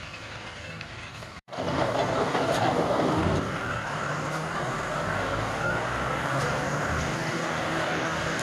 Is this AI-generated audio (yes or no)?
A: yes